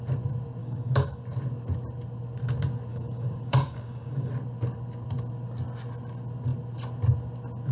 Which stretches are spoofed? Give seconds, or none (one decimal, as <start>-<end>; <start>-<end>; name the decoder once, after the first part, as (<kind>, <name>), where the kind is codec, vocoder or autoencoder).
0.6-1.2 (codec, DAC); 2.9-4.3